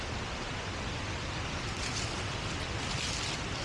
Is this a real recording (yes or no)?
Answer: yes